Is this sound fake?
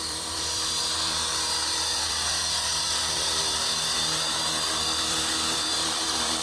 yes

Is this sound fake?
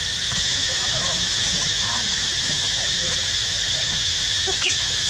yes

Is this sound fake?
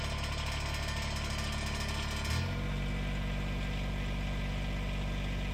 no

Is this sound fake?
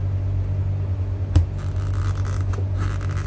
no